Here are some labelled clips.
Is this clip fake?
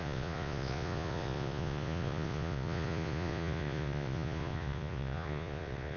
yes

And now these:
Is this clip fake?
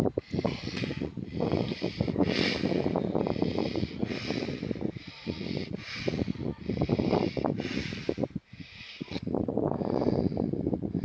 yes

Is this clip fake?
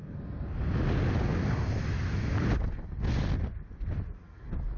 no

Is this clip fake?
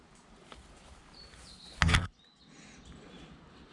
no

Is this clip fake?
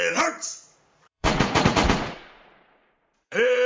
yes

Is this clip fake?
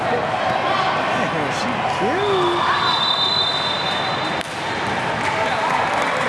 no